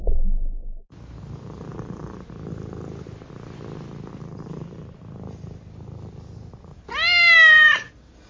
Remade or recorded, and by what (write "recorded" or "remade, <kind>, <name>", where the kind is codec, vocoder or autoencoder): recorded